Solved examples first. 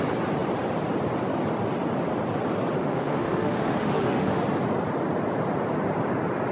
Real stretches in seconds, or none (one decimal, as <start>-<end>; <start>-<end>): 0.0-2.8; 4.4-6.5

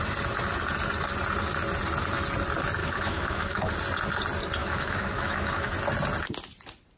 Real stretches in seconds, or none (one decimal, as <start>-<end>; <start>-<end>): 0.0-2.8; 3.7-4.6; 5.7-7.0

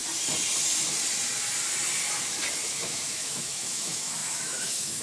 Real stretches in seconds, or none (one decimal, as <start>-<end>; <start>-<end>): 0.0-2.7